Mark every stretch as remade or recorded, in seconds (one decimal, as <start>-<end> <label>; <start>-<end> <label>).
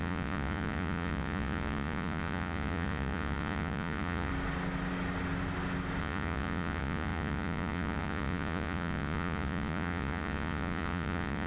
0.0-4.3 remade; 4.3-6.0 recorded; 6.0-11.5 remade